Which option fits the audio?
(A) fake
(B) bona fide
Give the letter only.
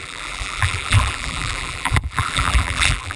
A